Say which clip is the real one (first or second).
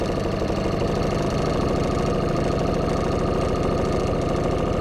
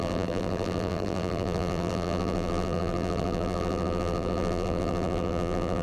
first